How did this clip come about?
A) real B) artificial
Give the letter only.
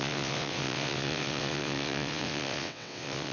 B